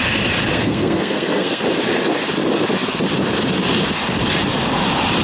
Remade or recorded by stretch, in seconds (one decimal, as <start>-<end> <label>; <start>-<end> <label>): 0.0-0.5 recorded; 0.5-1.6 remade; 1.6-5.2 recorded